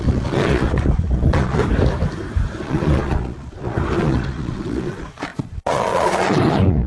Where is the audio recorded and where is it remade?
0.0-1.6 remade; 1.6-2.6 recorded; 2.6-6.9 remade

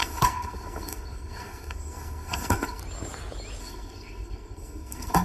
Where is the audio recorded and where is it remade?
0.0-2.8 remade; 2.8-3.6 recorded; 3.6-5.2 remade

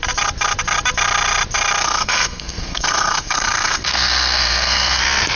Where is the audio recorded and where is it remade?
0.0-1.8 recorded; 1.8-5.0 remade; 5.0-5.4 recorded

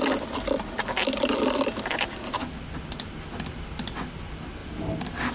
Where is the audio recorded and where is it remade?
0.0-5.3 recorded

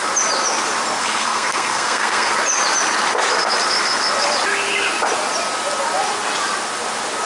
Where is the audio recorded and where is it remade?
0.0-1.0 recorded; 1.0-2.3 remade; 2.3-7.3 recorded

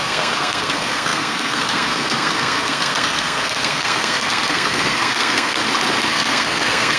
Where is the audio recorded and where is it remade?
0.0-5.6 remade; 5.6-6.1 recorded; 6.1-7.0 remade

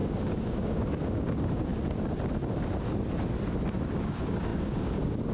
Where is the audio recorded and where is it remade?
0.0-1.7 remade; 1.7-4.0 recorded; 4.0-5.3 remade

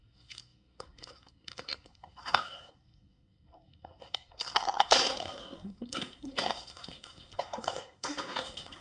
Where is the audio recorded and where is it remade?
0.0-8.8 remade